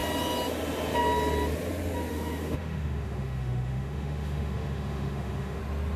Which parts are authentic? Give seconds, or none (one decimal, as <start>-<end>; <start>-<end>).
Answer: 0.0-2.1; 5.6-6.0